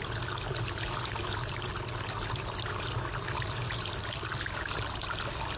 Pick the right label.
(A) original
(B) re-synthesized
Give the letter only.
A